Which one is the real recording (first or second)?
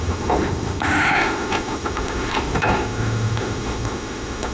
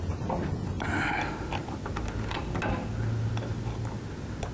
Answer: second